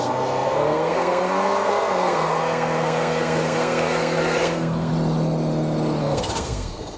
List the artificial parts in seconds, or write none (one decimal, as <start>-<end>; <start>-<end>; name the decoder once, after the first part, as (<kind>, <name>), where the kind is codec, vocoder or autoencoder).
0.0-4.9 (codec, SNAC); 6.0-7.0